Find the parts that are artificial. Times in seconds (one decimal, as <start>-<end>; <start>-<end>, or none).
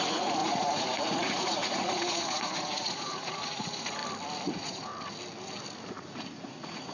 0.0-4.0; 4.5-4.9; 5.9-6.9